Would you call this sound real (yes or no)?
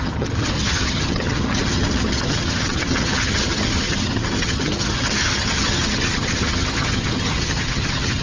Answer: no